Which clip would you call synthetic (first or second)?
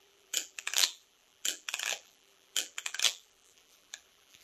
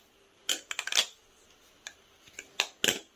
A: first